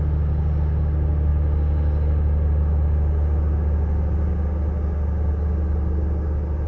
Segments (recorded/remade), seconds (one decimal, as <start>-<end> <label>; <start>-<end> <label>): 0.0-6.7 recorded